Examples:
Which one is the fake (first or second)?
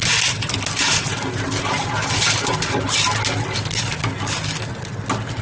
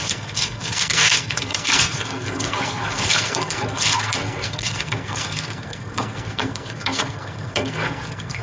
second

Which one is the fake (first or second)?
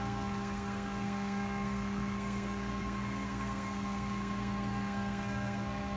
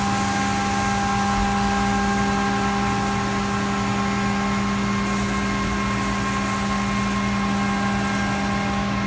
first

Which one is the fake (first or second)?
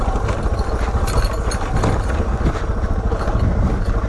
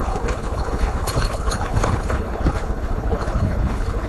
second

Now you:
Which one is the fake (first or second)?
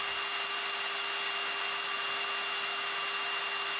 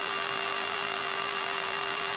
second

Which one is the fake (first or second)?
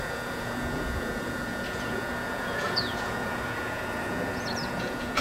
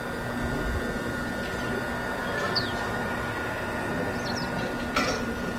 first